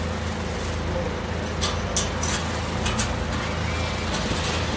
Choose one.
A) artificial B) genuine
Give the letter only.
B